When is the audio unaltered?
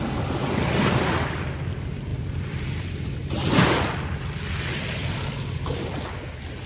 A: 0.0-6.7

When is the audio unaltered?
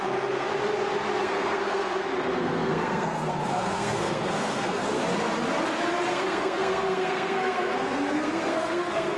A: 0.5-1.2; 5.0-6.1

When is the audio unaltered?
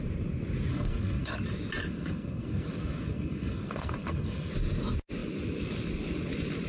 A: 0.0-0.7; 1.4-1.8; 4.5-6.7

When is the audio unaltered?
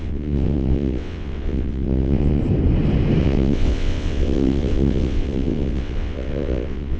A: 2.4-3.2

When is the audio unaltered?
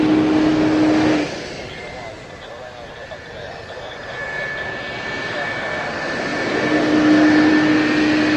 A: 0.0-8.4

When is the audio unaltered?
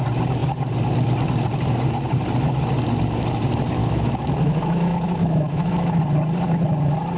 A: 0.0-3.8; 6.0-7.2